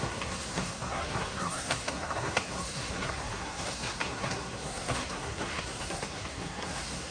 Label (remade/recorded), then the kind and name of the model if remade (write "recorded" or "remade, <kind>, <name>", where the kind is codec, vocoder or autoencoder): remade, codec, SNAC